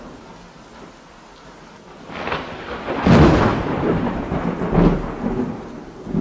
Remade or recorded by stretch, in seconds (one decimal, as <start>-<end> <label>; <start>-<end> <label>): 0.0-3.5 recorded; 3.5-4.3 remade; 4.3-6.2 recorded